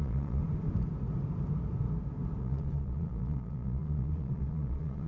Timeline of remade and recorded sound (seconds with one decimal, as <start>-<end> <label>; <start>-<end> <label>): 0.0-0.4 remade; 0.4-2.4 recorded; 2.4-5.1 remade